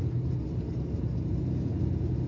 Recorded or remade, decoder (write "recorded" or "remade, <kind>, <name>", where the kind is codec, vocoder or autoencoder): recorded